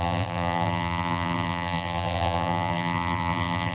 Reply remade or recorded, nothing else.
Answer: remade